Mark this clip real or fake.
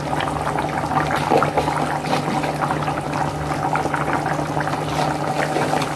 real